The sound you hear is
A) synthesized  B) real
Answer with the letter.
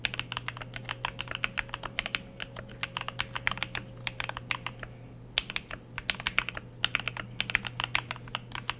B